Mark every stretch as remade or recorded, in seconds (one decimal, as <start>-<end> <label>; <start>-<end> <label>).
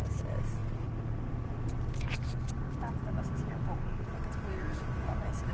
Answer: 0.0-5.5 recorded